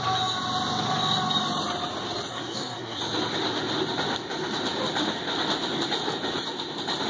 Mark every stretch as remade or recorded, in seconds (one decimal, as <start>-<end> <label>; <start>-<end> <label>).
0.0-2.3 recorded; 2.3-3.0 remade; 3.0-7.1 recorded